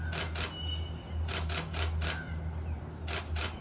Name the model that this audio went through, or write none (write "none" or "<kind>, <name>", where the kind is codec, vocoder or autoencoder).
none